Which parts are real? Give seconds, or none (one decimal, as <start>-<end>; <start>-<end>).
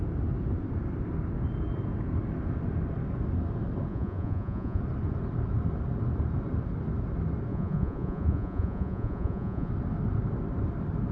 0.0-3.9; 4.8-7.5; 9.7-11.1